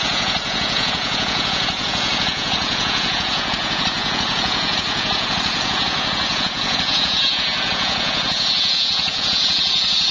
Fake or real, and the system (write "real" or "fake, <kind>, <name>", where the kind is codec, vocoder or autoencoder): fake, vocoder, Vocos